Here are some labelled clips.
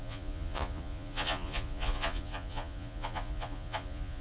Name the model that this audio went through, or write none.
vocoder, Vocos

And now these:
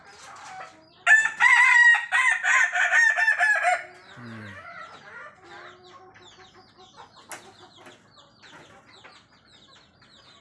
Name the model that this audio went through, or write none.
none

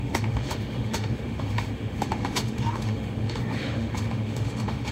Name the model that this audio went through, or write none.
autoencoder, DAC-VAE